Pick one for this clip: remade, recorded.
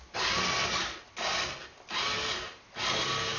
recorded